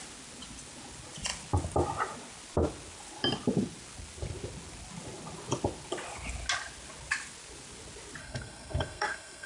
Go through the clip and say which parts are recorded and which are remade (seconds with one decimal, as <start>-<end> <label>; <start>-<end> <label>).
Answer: 0.0-8.2 recorded; 8.2-9.5 remade